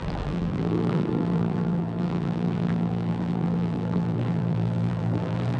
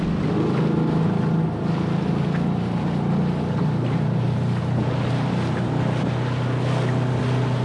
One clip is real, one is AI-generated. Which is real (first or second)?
second